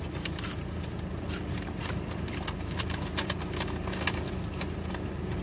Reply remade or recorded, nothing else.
recorded